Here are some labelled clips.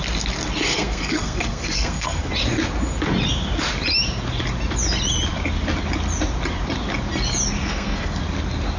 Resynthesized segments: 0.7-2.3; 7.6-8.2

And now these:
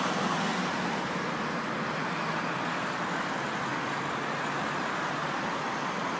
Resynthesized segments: none

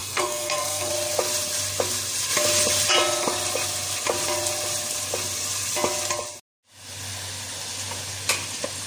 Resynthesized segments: 0.0-0.9

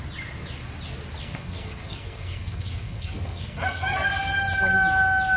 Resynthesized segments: 1.2-4.1

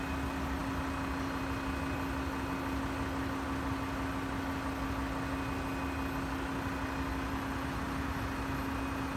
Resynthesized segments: none

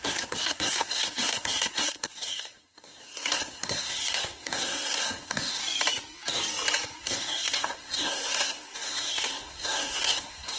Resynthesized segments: 0.0-5.6; 7.0-10.6

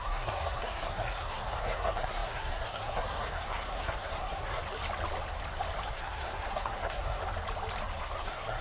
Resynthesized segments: 0.0-4.6; 5.9-7.2; 8.0-8.6